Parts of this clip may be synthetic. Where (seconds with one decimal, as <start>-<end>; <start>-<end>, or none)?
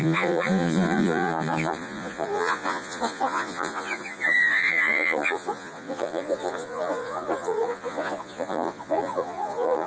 0.0-9.9